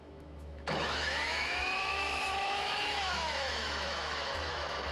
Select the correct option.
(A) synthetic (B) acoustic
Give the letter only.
A